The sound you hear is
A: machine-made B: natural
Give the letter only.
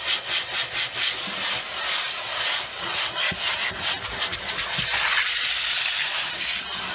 B